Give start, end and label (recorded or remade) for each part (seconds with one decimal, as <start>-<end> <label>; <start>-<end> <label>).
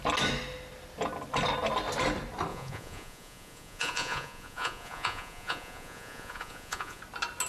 0.0-2.5 recorded; 2.5-7.0 remade; 7.0-7.5 recorded